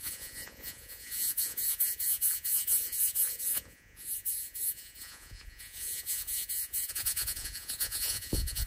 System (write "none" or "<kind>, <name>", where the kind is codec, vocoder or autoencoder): vocoder, Vocos